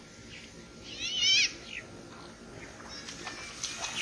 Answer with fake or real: real